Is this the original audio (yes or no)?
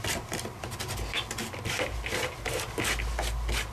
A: yes